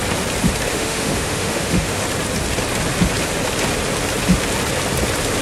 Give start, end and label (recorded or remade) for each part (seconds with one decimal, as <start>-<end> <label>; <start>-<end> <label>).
0.0-0.7 recorded; 0.7-2.0 remade; 2.0-5.4 recorded